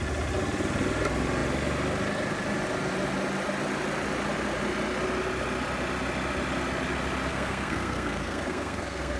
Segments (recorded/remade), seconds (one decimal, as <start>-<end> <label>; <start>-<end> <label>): 0.0-7.3 recorded; 7.3-9.2 remade